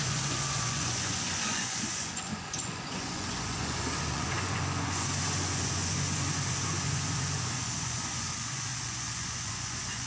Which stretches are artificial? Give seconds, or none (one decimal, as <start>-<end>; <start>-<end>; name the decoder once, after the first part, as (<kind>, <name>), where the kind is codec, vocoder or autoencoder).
0.0-10.1 (vocoder, Vocos)